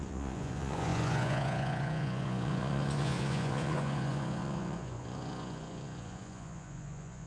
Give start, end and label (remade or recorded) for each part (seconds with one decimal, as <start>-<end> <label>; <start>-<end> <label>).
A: 0.0-7.3 remade